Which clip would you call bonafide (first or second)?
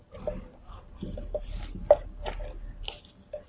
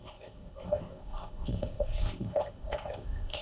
first